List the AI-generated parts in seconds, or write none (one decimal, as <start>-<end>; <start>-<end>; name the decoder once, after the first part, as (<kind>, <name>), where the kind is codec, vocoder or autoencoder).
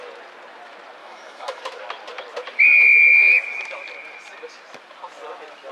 1.0-1.6 (autoencoder, DAC-VAE)